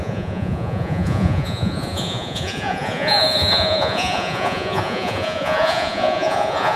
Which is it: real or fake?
fake